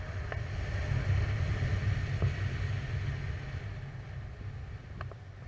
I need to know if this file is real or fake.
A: real